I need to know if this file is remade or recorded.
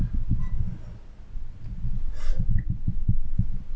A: recorded